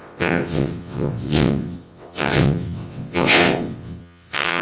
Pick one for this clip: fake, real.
fake